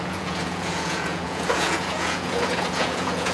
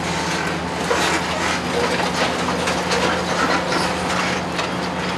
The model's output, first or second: first